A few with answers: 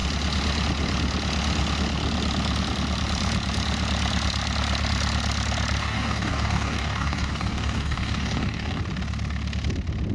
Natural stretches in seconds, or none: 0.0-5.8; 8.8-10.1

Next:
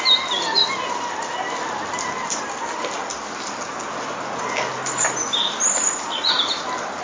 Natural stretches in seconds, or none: 0.0-7.0

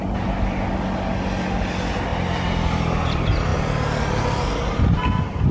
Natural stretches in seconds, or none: 0.0-5.5

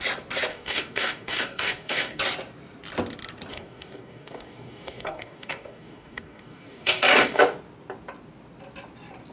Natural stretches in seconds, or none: 0.0-0.5; 2.2-3.5; 7.4-9.3

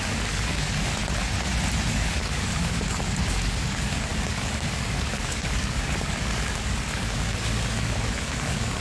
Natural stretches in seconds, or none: 1.0-1.9

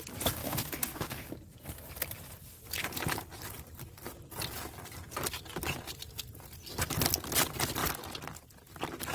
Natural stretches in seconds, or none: 0.0-0.4; 1.3-9.1

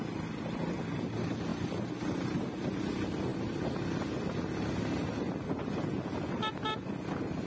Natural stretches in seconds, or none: 0.0-7.5